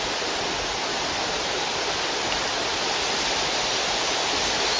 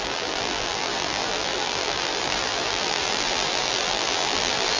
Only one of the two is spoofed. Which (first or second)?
second